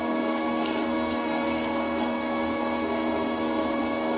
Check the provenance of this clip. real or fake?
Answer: fake